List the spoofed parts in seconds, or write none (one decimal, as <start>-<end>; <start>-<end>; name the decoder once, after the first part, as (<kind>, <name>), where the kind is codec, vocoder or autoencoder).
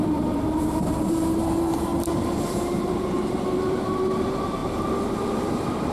0.0-5.9 (vocoder, BigVGAN v2)